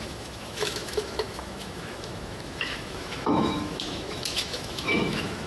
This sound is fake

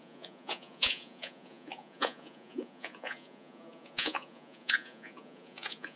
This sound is fake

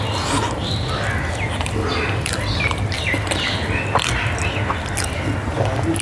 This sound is real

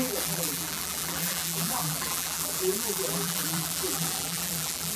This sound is fake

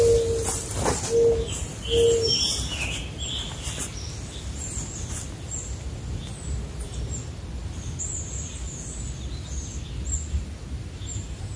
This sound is real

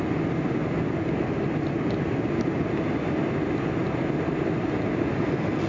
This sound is real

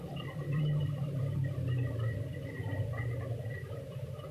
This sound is fake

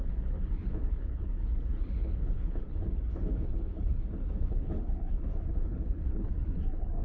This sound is fake